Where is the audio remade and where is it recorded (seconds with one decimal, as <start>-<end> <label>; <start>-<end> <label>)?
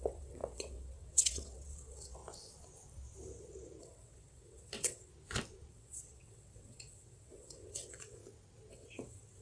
0.0-2.2 remade; 2.2-3.8 recorded; 3.8-5.1 remade; 5.1-5.7 recorded; 5.7-8.2 remade; 8.2-8.7 recorded; 8.7-9.4 remade